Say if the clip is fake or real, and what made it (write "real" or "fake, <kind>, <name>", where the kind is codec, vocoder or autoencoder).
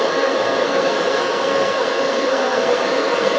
fake, codec, SNAC